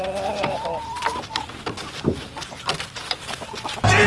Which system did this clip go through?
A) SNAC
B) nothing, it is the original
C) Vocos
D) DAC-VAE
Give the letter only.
B